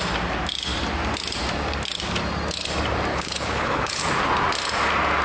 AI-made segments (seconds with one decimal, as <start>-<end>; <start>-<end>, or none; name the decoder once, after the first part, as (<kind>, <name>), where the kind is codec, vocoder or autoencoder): 3.1-4.0 (codec, HILCodec)